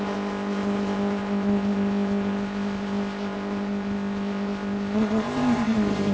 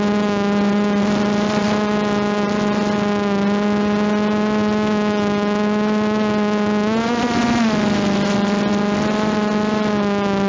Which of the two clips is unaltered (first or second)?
second